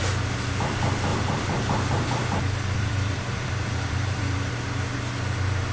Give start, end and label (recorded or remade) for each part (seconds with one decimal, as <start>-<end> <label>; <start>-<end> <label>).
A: 0.0-1.1 recorded; 1.1-4.5 remade; 4.5-5.7 recorded